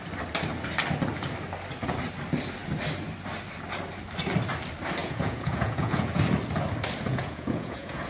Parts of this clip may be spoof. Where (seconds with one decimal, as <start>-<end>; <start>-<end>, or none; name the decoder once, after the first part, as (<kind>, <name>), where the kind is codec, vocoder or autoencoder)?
5.0-6.2 (vocoder, Vocos); 7.1-8.1